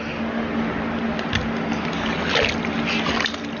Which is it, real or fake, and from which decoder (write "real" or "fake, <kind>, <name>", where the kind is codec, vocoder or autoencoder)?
real